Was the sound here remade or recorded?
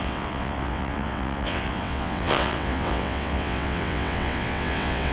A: remade